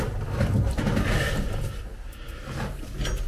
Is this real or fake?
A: real